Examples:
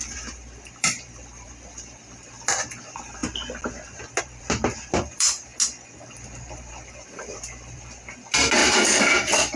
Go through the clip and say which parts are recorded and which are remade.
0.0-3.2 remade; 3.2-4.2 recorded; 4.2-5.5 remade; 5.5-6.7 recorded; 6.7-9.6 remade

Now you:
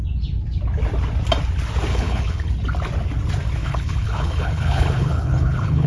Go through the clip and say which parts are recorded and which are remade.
0.0-1.9 recorded; 1.9-2.5 remade; 2.5-3.6 recorded; 3.6-5.9 remade

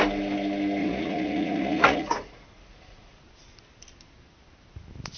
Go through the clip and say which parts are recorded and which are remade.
0.0-0.8 recorded; 0.8-3.2 remade; 3.2-5.2 recorded